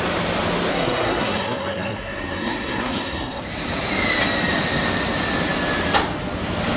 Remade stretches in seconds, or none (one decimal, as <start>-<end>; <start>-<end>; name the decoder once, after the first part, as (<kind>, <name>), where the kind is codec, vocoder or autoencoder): 0.7-3.4 (codec, SNAC)